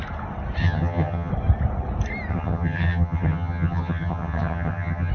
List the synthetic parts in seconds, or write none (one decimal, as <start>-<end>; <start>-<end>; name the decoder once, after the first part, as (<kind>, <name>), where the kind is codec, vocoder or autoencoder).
0.6-1.3 (vocoder, HiFi-GAN); 2.3-5.1